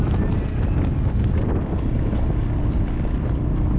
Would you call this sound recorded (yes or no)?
yes